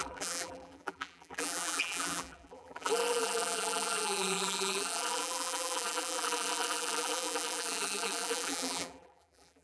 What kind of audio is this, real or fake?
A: fake